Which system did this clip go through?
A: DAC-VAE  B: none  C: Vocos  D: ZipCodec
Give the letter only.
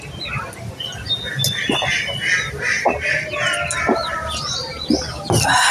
B